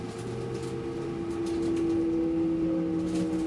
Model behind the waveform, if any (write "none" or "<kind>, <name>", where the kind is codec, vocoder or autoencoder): none